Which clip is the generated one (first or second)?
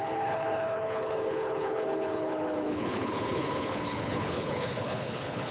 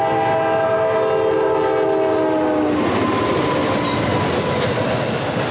first